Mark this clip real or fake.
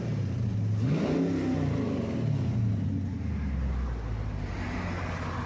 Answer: real